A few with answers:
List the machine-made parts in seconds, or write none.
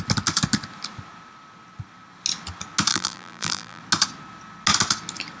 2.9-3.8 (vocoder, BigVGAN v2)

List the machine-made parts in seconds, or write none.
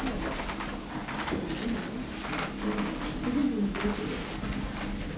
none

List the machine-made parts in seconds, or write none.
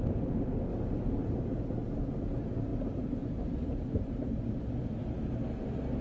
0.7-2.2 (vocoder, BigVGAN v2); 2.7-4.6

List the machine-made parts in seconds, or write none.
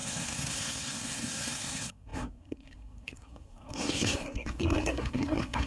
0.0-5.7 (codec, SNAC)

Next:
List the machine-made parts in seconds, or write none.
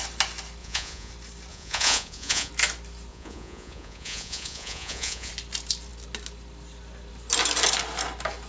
0.6-1.1 (vocoder, Vocos); 1.5-2.5; 3.1-5.3